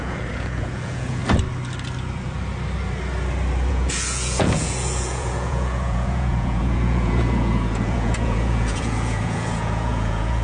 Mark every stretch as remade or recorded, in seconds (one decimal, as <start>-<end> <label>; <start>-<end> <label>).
0.0-1.2 remade; 1.2-3.7 recorded; 3.7-10.4 remade